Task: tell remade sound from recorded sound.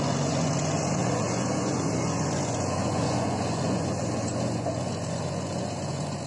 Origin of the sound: remade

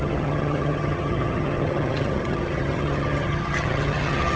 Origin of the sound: remade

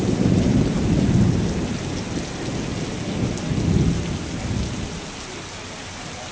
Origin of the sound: recorded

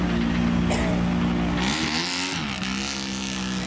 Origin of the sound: recorded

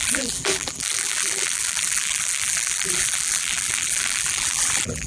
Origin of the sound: remade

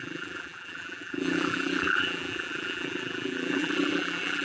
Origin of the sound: remade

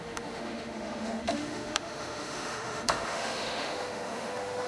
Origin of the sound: remade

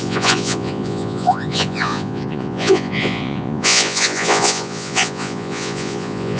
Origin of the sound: remade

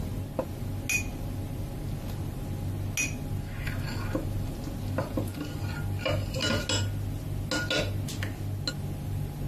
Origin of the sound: recorded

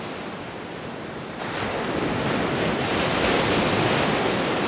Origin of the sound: recorded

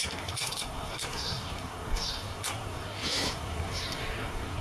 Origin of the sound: remade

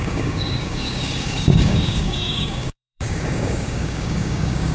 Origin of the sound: remade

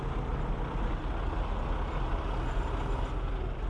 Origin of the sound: recorded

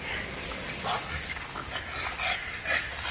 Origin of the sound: recorded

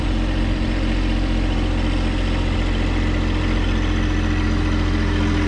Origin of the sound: recorded